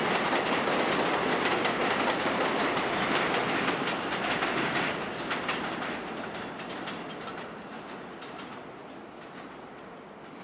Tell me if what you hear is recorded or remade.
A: recorded